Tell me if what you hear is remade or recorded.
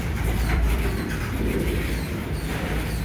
remade